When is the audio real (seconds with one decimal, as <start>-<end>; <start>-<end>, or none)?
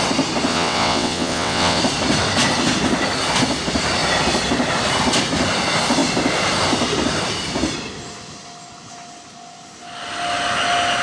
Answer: 0.0-0.5; 1.8-11.0